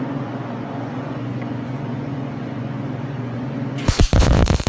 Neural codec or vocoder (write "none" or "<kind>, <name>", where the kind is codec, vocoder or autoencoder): vocoder, Vocos